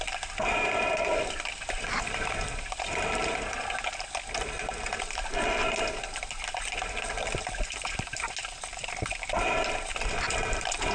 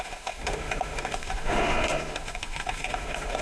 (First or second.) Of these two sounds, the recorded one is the first